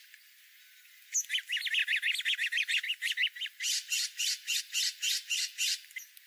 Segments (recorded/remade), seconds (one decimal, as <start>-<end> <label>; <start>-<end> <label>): 0.0-6.3 recorded